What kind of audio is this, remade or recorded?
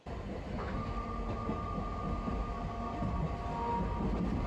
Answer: recorded